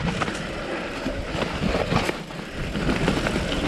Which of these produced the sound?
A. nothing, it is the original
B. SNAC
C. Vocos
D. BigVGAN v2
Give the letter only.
A